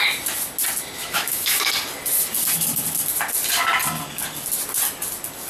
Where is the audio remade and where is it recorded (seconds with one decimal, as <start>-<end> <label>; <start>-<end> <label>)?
0.0-1.0 recorded; 1.0-1.7 remade; 1.7-5.5 recorded